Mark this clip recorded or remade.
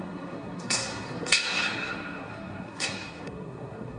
remade